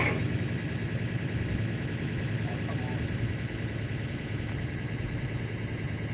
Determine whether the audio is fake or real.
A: real